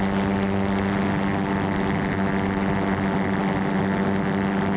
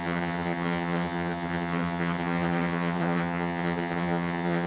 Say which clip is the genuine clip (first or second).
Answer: first